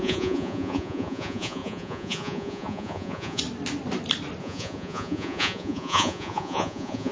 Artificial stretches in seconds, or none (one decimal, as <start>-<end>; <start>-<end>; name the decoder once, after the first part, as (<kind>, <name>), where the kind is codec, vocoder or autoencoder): 0.0-3.4 (vocoder, Vocos); 4.4-7.1